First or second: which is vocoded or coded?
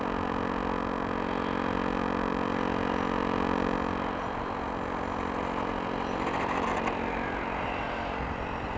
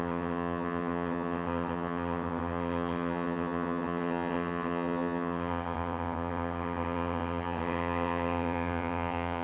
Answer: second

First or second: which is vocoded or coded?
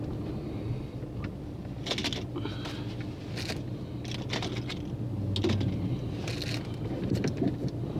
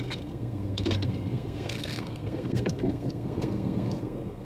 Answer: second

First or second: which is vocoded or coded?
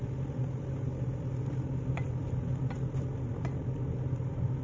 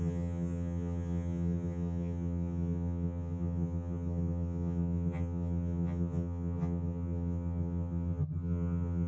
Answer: second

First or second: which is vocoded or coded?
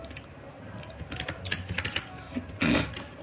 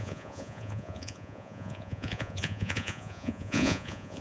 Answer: second